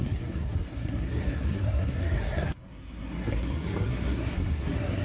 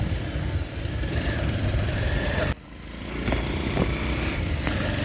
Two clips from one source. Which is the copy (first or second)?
first